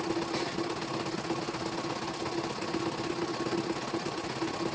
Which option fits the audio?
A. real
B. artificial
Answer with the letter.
A